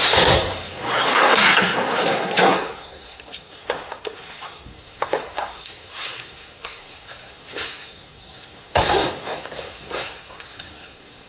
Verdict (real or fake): fake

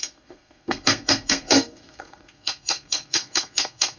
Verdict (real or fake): fake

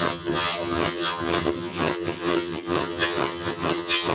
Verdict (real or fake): fake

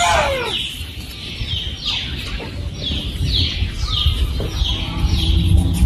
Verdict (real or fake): real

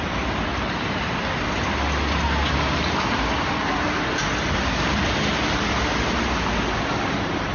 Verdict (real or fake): real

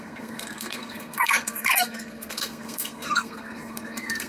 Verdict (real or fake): fake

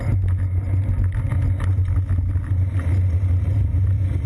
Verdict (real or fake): real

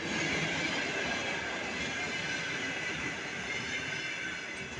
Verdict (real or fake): real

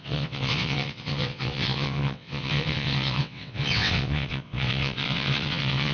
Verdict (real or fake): fake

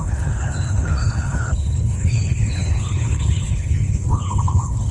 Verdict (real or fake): fake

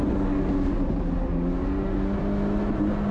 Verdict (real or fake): real